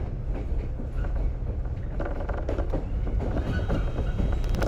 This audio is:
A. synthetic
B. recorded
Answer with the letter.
B